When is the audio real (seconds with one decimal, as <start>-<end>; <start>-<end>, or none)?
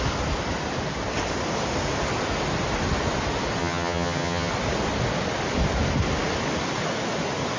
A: 0.0-3.6; 4.5-7.6